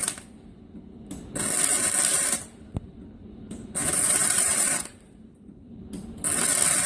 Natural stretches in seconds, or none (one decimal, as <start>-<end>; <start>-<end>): 0.0-2.1; 5.8-6.9